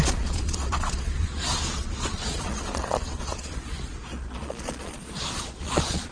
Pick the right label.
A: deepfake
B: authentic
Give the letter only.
A